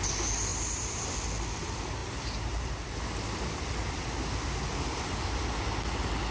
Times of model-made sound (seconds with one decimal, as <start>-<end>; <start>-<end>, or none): 0.5-1.1; 2.0-2.7